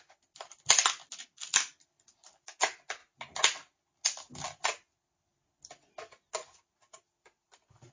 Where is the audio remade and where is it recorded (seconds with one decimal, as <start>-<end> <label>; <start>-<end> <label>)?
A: 0.0-7.9 recorded